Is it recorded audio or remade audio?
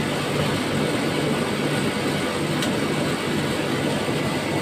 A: recorded